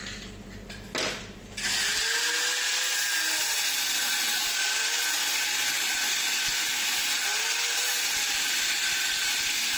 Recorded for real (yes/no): yes